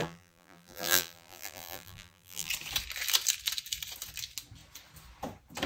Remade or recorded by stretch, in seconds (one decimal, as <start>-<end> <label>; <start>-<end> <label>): 0.0-2.5 remade; 2.5-5.7 recorded